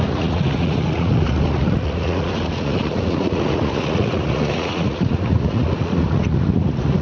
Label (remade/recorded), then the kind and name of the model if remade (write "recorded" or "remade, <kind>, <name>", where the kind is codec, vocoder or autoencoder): remade, vocoder, Vocos